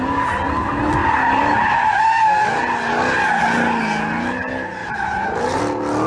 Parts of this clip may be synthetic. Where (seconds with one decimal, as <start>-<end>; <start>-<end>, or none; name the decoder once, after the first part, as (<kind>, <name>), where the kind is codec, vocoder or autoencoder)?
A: 4.8-5.6 (vocoder, BigVGAN v2)